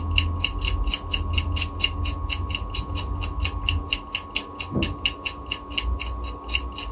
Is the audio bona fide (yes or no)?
yes